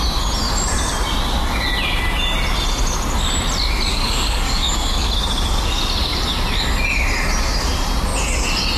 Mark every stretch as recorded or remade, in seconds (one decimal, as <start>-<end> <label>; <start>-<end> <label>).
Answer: 0.0-3.9 recorded; 3.9-5.1 remade; 5.1-8.8 recorded